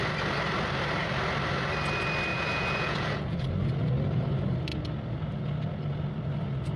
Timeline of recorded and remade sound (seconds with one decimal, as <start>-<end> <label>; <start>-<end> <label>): 0.0-2.3 recorded; 2.3-3.4 remade; 3.4-6.8 recorded